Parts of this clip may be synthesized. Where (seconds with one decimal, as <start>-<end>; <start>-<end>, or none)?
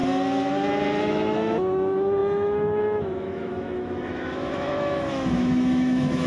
1.0-6.3